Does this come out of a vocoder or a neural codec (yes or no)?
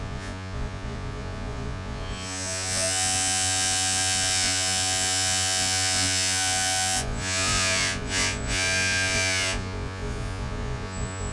yes